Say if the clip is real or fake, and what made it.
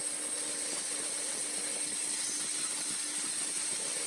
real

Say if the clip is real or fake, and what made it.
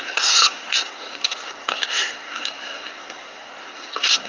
fake, codec, SNAC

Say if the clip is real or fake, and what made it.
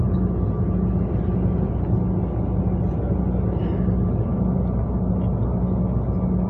real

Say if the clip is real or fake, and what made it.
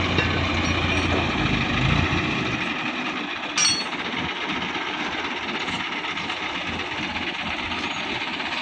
real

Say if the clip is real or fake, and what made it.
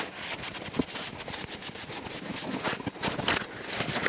real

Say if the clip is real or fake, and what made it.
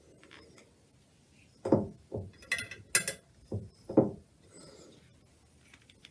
real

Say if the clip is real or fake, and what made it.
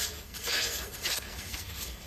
fake, codec, SNAC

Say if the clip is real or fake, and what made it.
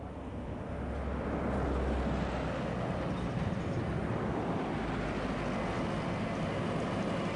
real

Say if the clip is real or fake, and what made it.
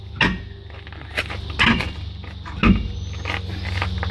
real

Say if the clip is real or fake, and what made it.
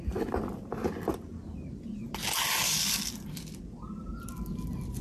real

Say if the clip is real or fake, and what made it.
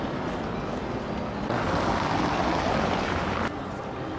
real